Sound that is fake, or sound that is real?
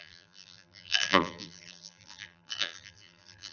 fake